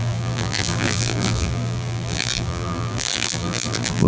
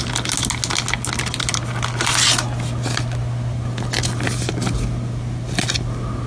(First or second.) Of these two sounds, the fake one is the first